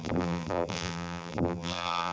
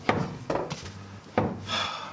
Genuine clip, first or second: second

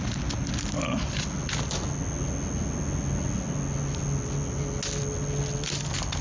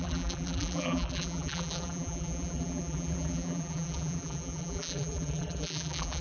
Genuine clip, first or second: first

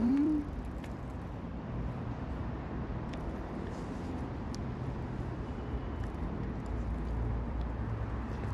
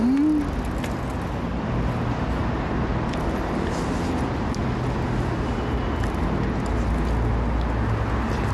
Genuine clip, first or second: second